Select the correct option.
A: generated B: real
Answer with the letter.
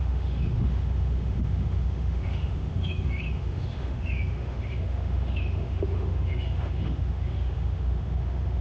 A